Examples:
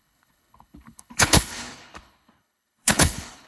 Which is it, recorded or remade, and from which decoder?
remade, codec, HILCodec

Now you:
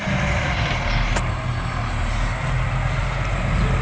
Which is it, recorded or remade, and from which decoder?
recorded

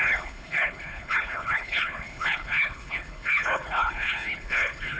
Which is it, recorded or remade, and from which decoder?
remade, codec, HILCodec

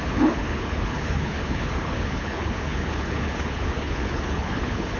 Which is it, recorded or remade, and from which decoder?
remade, codec, HILCodec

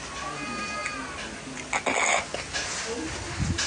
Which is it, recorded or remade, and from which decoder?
recorded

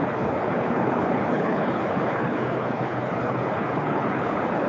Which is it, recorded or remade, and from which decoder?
remade, codec, HILCodec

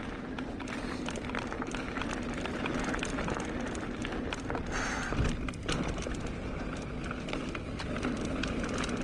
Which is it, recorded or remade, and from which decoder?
recorded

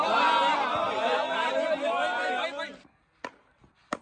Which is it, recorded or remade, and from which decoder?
recorded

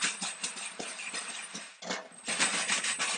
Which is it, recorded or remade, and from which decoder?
recorded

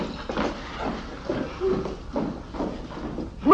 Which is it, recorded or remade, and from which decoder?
recorded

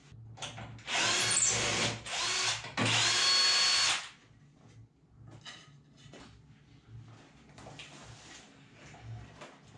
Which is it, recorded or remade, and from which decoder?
recorded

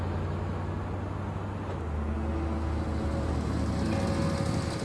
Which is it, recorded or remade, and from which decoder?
recorded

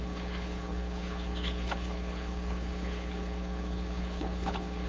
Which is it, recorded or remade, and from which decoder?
remade, codec, HILCodec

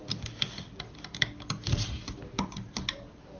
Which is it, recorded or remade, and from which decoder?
recorded